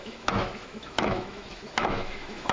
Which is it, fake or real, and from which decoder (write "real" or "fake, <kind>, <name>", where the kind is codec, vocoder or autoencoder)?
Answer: fake, autoencoder, DAC-VAE